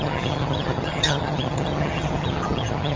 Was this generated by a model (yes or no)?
yes